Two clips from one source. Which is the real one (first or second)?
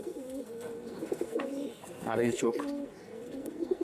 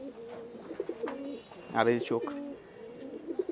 second